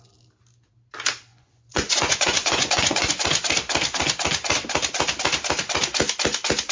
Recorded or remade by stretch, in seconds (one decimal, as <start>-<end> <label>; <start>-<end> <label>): 0.0-1.3 recorded; 1.3-3.2 remade; 3.2-6.7 recorded